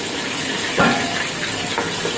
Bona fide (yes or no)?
yes